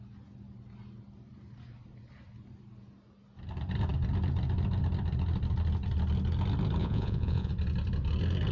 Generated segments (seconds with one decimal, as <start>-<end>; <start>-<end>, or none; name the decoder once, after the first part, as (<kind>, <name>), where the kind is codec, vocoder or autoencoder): 6.8-7.5 (vocoder, Vocos)